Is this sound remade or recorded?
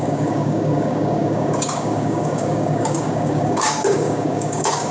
remade